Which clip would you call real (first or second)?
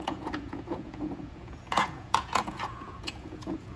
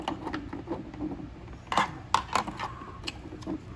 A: second